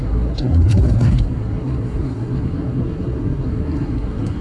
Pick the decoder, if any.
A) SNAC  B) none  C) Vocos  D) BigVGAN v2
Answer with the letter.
A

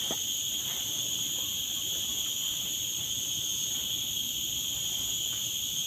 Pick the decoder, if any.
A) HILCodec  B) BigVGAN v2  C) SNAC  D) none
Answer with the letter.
D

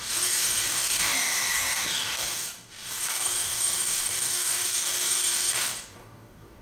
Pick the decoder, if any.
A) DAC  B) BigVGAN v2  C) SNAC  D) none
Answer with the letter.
A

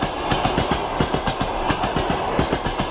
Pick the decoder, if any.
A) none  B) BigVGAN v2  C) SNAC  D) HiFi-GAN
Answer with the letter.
A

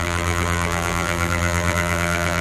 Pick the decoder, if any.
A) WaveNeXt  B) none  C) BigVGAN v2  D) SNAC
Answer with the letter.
C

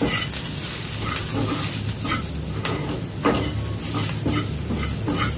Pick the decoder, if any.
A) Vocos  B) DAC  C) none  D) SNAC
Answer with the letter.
C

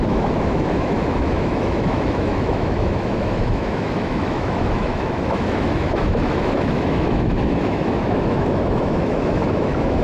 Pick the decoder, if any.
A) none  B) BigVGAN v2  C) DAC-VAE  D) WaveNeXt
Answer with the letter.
C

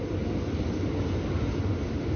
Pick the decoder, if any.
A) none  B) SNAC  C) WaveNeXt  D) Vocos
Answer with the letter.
A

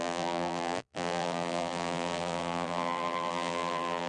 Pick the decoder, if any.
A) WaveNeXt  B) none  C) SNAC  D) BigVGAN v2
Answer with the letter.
D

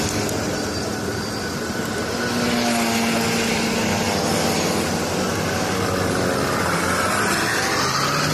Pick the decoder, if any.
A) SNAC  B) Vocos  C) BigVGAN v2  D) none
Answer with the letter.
D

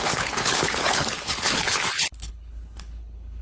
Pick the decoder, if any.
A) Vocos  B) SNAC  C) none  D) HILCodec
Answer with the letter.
D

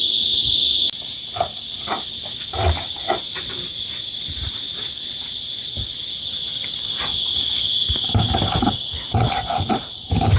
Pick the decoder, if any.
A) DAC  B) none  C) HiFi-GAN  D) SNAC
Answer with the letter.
B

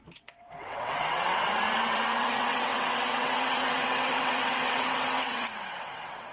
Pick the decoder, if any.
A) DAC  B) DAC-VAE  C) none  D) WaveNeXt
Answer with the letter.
D